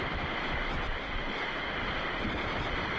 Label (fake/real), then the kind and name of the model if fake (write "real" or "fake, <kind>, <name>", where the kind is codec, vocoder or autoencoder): real